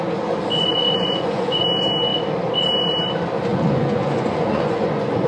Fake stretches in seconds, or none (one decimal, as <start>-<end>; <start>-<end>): 0.7-1.6; 3.5-5.3